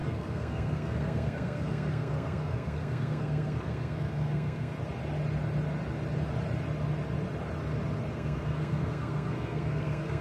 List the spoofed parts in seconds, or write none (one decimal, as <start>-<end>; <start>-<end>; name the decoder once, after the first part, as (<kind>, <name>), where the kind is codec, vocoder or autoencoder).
0.0-4.7 (codec, SNAC); 8.1-10.2

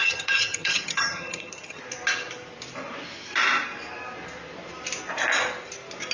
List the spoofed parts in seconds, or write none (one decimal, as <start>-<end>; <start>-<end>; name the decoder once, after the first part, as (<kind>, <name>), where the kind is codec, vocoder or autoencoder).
0.0-1.8 (vocoder, HiFi-GAN)

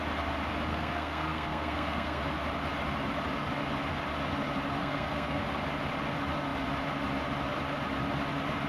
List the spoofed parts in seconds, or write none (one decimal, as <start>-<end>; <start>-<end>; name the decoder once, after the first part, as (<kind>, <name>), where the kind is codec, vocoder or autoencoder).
0.7-2.2 (codec, SNAC); 4.8-5.4

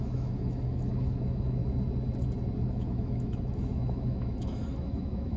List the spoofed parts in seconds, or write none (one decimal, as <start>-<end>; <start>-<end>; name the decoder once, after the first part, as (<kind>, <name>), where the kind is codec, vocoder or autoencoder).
0.0-1.6 (autoencoder, DAC-VAE); 2.7-5.4

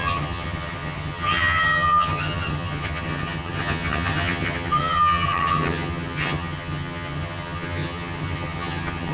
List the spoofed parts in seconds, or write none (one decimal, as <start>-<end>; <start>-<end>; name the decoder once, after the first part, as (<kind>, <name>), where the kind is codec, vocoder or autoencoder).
0.0-9.1 (vocoder, HiFi-GAN)

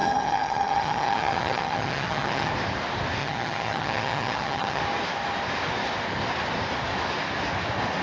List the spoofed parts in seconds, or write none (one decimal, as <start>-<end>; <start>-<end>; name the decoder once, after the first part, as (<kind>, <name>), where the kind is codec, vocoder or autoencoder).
0.0-2.5 (vocoder, HiFi-GAN); 3.2-4.8